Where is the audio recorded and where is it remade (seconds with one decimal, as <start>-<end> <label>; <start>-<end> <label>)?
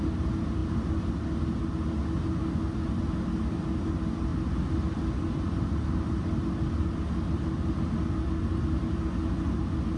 0.0-10.0 recorded